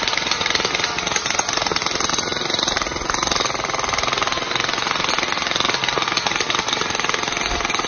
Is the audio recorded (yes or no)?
yes